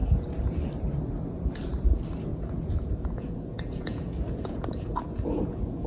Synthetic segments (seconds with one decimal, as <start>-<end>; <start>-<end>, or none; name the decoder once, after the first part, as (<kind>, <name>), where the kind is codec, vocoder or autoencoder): 2.3-5.9 (vocoder, Vocos)